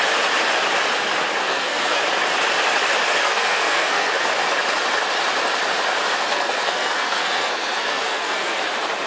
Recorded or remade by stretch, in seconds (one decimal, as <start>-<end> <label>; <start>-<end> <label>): 0.0-1.4 recorded; 1.4-2.0 remade; 2.0-3.2 recorded; 3.2-4.1 remade; 4.1-6.3 recorded; 6.3-8.6 remade; 8.6-9.1 recorded